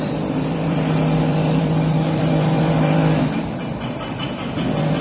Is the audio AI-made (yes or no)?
yes